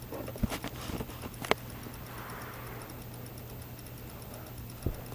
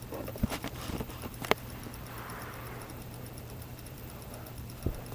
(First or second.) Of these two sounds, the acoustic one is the first